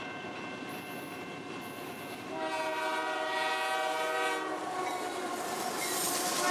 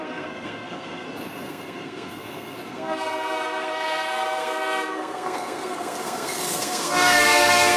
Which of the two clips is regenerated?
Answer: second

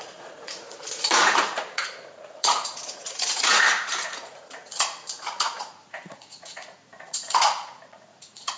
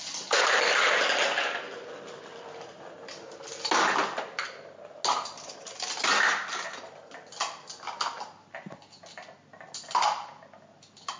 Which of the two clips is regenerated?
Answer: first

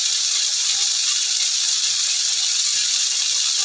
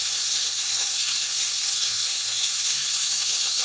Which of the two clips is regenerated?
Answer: second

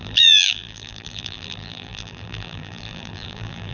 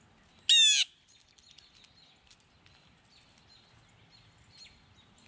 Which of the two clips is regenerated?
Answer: first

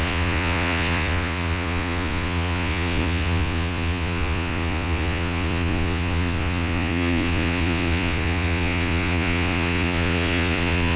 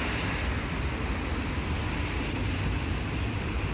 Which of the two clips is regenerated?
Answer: first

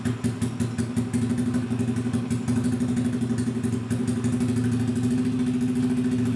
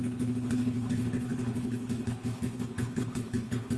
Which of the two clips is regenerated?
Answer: second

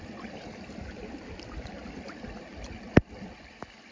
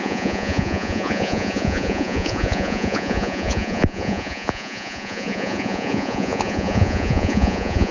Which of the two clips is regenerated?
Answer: second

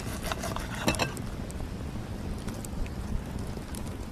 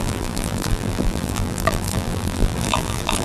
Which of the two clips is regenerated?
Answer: second